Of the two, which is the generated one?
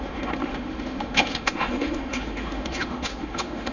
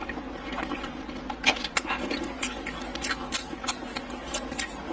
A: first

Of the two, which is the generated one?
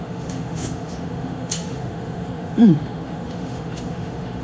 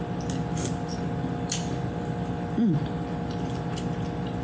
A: first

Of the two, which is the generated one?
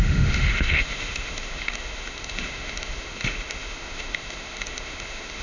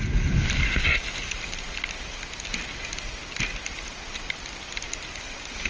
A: first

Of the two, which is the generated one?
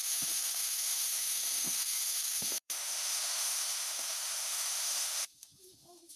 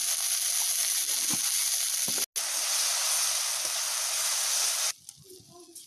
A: first